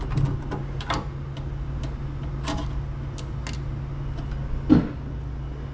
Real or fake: real